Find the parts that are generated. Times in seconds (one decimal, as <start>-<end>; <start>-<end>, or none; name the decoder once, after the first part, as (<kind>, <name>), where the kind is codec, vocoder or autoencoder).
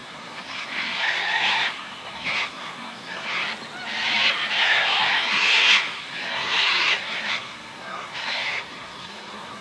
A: 0.0-3.4 (codec, SNAC); 4.6-9.6